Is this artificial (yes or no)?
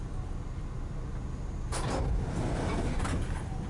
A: no